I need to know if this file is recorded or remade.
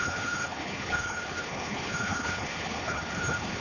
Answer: remade